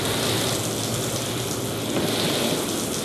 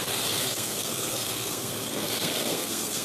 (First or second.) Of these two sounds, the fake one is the second